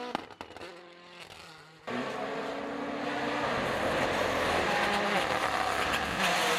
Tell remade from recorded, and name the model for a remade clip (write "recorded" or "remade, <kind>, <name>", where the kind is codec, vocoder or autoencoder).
recorded